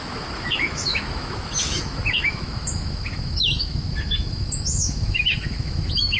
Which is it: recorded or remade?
remade